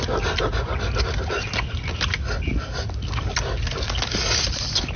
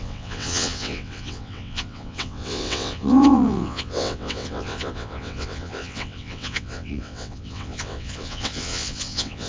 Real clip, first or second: first